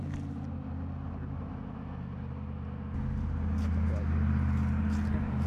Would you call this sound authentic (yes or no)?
yes